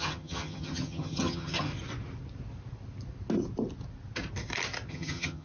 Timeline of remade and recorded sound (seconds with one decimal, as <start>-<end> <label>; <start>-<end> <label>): 0.0-1.7 remade; 1.7-4.9 recorded; 4.9-5.4 remade